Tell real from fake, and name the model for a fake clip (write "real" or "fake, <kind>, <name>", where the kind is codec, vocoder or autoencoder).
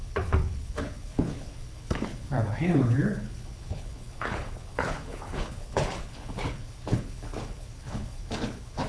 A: fake, codec, HILCodec